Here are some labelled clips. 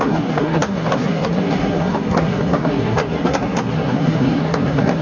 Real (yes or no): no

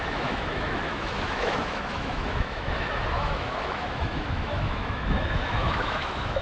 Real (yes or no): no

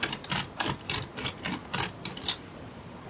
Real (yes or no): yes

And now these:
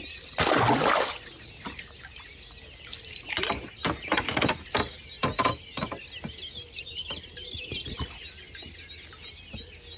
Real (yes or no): yes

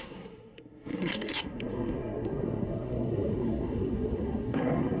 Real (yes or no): no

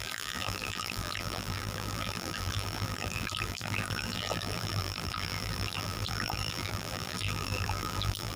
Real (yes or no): no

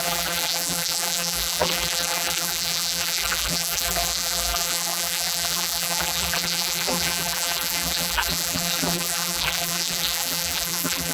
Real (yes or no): no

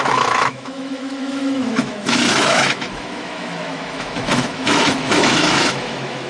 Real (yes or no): no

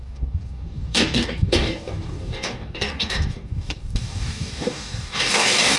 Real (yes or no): no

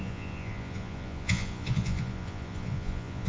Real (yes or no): no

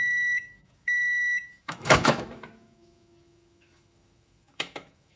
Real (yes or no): no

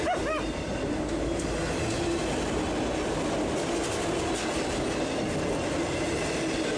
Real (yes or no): yes